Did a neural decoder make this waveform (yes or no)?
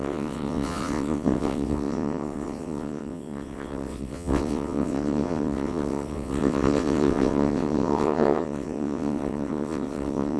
yes